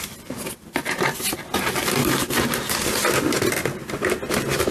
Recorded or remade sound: recorded